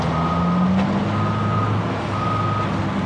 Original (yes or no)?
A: yes